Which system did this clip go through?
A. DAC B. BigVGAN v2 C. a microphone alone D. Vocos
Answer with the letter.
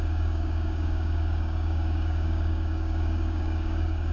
A